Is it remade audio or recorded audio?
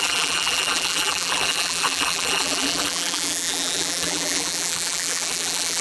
remade